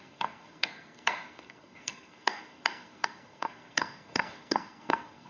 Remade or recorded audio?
remade